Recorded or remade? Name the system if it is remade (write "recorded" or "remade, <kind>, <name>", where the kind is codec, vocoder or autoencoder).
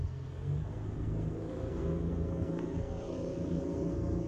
remade, codec, SNAC